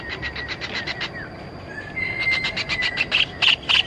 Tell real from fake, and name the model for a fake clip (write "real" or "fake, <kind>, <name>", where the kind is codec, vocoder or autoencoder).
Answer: real